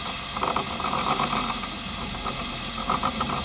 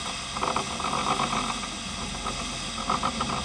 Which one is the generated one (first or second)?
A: first